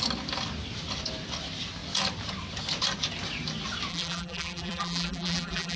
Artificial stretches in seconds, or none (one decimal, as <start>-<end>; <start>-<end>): 3.9-5.8